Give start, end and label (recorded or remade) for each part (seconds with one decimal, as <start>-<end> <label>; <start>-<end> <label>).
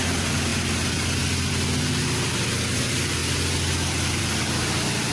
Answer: 0.0-5.1 recorded